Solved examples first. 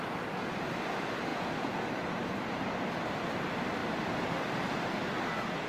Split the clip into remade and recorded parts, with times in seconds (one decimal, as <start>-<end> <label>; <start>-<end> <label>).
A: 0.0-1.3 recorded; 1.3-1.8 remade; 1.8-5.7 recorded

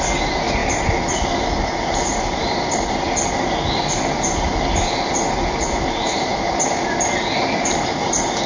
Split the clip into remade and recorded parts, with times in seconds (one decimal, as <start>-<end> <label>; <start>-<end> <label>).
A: 0.0-8.5 recorded

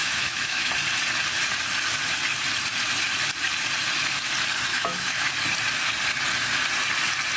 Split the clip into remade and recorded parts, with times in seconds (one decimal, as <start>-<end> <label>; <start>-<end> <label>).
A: 0.0-0.7 remade; 0.7-4.7 recorded; 4.7-5.3 remade; 5.3-7.4 recorded

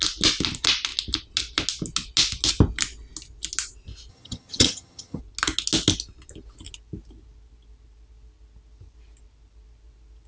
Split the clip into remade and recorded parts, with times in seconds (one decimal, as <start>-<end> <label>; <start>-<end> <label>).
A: 0.0-4.1 recorded; 4.1-5.2 remade; 5.2-10.3 recorded